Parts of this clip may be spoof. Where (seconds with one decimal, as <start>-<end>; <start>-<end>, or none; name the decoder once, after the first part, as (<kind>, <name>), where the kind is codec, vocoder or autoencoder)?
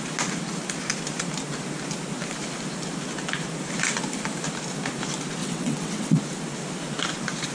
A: 5.4-6.2 (vocoder, WaveNeXt)